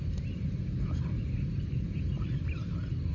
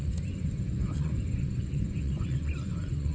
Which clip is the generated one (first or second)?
second